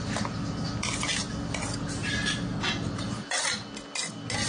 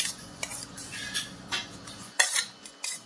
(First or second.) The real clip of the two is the first